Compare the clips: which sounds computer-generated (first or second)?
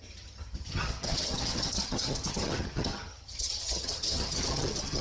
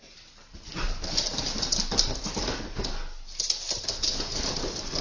first